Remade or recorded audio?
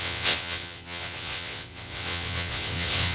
remade